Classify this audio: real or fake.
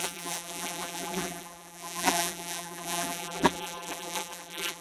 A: fake